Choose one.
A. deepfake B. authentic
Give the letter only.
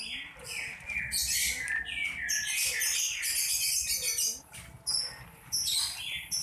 B